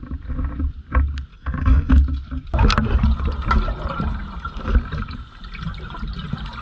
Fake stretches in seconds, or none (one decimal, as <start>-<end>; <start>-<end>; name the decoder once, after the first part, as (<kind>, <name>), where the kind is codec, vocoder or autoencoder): 1.3-1.9 (codec, SNAC)